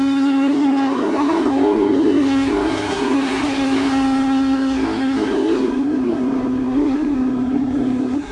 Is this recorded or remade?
remade